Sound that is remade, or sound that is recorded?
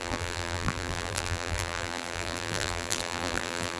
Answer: remade